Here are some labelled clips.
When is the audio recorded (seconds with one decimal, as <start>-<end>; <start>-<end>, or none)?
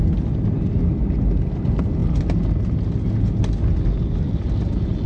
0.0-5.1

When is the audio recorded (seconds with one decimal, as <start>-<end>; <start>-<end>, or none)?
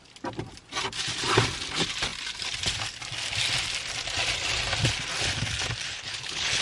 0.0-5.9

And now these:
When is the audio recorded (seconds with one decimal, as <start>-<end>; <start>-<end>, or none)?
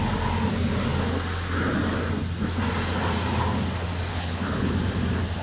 0.0-4.1; 4.7-5.4